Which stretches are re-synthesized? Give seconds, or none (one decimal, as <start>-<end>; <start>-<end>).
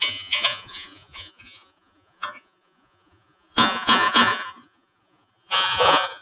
0.0-6.2